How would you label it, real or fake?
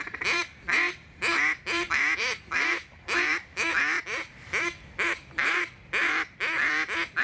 fake